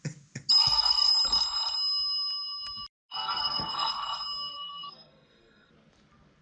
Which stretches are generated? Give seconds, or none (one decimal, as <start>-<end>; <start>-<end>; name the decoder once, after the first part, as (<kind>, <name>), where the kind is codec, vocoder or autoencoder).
0.6-1.1 (codec, SNAC); 3.1-3.9; 4.5-5.7